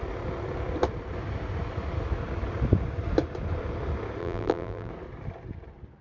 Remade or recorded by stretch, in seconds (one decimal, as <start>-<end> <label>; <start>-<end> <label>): 0.0-4.2 recorded; 4.2-4.9 remade; 4.9-6.0 recorded